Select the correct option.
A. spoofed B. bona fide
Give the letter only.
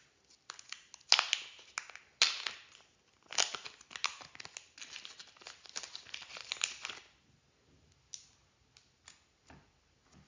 B